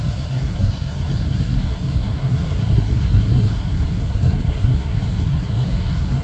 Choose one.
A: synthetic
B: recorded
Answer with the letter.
A